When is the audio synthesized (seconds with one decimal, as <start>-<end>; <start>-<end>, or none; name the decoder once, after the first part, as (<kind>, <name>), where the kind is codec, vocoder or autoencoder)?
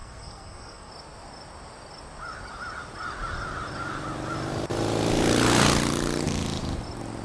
0.0-0.9 (codec, SNAC)